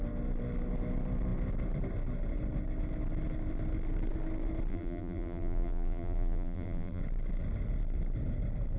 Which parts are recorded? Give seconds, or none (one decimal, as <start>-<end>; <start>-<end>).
0.0-4.7; 7.0-8.8